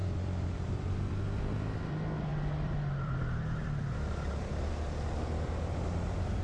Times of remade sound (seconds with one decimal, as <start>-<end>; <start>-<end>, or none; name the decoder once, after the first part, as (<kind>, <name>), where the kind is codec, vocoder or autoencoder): 0.0-1.2 (vocoder, BigVGAN v2); 2.3-4.7